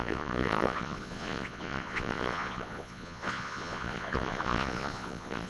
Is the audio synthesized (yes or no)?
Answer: yes